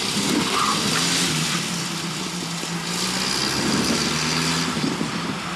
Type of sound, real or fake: real